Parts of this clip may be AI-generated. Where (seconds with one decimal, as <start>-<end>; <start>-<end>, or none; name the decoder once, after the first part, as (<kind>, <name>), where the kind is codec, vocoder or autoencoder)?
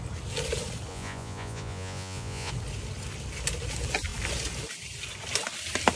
0.9-2.5 (vocoder, Vocos)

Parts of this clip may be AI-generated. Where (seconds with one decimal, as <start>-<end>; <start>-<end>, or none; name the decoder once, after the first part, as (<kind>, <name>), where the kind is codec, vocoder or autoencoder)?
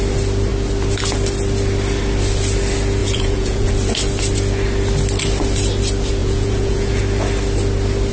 3.0-3.7 (vocoder, Vocos); 6.2-7.0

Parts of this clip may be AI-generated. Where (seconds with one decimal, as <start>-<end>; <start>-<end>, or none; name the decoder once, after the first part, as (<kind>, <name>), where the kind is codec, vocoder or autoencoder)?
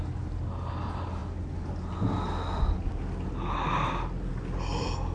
none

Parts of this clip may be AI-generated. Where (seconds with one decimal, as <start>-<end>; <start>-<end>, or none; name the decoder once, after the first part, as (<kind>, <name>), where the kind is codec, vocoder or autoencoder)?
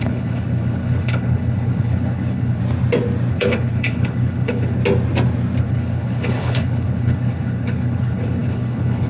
0.0-2.6 (codec, HILCodec); 3.3-4.8; 5.6-9.1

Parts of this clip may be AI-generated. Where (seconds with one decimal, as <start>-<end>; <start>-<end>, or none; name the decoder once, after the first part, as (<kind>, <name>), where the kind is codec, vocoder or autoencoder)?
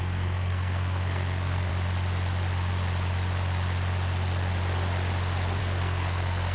0.0-1.7 (codec, SNAC); 5.6-6.5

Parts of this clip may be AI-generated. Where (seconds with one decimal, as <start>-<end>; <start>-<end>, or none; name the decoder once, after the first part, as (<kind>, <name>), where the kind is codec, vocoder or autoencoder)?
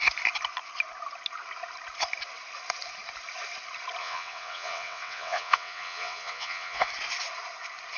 4.0-6.9 (vocoder, WaveNeXt)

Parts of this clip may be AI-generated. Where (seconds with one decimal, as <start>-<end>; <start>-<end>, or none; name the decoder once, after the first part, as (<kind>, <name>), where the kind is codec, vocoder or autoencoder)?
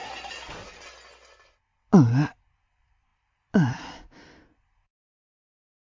none